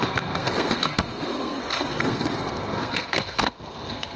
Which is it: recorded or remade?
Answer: remade